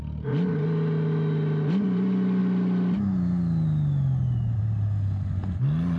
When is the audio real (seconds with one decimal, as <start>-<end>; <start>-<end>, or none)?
0.0-6.0